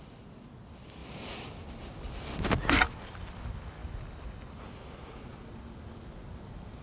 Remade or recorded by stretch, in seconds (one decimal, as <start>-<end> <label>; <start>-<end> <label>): 0.0-6.8 recorded